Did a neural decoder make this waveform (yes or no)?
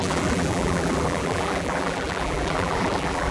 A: yes